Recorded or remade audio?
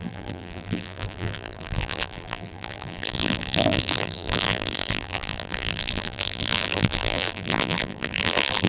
remade